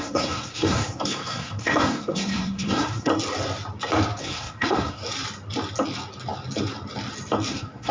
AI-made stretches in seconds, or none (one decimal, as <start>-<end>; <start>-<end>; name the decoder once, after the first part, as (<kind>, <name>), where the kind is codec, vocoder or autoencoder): 0.0-3.1 (codec, SNAC); 4.2-5.0; 7.5-7.9